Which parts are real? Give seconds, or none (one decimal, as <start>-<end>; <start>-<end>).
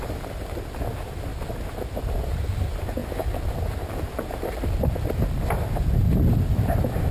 0.0-7.1